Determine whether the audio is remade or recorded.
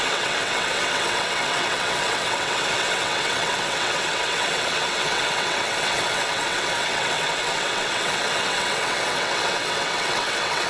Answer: remade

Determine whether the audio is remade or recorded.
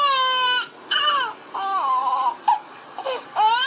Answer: recorded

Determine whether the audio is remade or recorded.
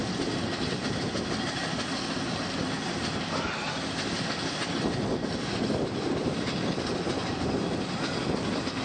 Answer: recorded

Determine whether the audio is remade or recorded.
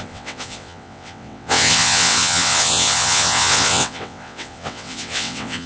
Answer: remade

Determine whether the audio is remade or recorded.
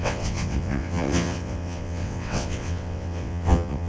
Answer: remade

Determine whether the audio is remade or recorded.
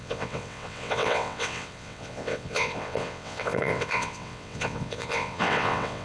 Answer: remade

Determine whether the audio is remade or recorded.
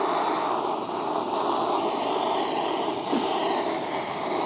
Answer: recorded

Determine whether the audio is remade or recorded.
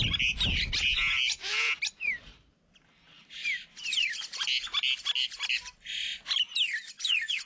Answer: recorded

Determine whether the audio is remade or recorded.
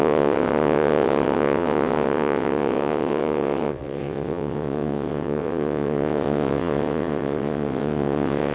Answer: remade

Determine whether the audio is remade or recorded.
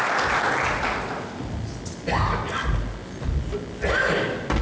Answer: recorded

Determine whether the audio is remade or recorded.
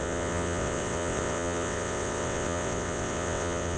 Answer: remade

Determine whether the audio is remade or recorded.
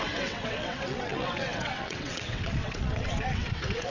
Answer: remade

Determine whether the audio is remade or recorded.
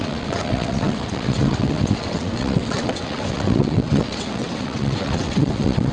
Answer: remade